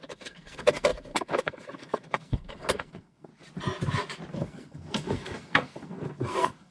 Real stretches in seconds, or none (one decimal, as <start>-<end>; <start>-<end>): 3.3-4.3

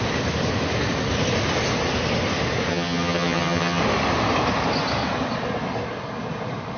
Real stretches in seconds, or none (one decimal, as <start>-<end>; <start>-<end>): 0.0-2.7; 3.8-6.8

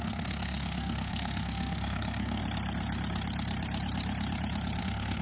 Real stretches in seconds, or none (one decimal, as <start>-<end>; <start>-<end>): 2.4-4.8

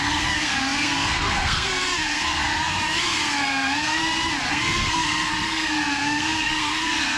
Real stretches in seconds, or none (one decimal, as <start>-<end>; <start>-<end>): 4.0-4.5

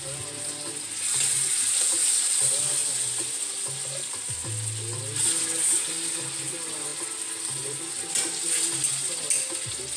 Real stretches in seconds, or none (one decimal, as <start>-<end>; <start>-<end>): 0.0-10.0

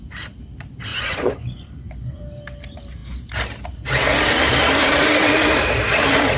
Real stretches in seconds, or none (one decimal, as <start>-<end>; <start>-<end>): 0.0-0.9; 2.2-6.4

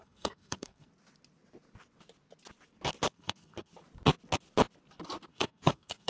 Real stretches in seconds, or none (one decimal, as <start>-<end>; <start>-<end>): 0.9-3.1; 3.7-5.3

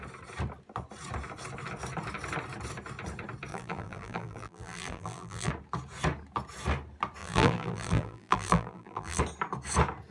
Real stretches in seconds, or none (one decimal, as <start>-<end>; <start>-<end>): 0.0-3.5; 5.5-7.2; 9.2-10.1